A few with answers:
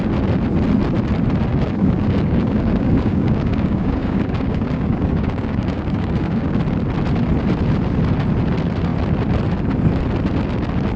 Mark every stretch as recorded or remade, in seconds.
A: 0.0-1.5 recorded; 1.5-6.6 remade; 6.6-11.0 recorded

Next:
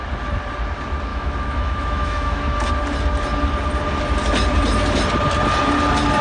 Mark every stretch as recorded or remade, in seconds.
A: 0.0-1.1 recorded; 1.1-2.7 remade; 2.7-6.2 recorded

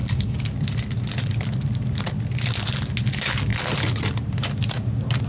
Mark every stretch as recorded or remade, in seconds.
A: 0.0-1.3 remade; 1.3-3.5 recorded; 3.5-4.2 remade; 4.2-5.3 recorded

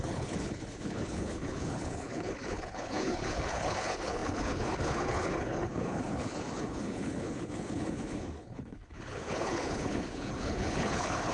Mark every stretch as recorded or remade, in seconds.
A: 0.0-11.3 remade